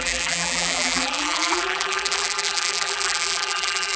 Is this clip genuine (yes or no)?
no